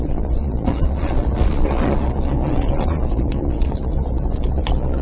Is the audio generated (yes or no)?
yes